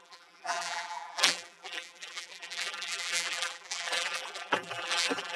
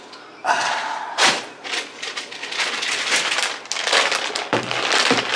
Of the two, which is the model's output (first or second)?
first